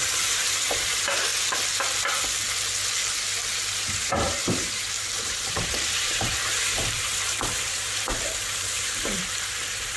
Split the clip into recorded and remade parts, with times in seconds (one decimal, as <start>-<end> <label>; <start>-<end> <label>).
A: 0.0-1.3 remade; 1.3-3.9 recorded; 3.9-10.0 remade